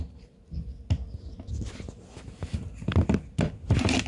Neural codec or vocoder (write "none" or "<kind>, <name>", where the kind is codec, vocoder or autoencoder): none